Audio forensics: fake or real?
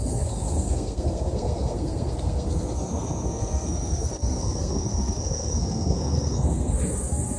fake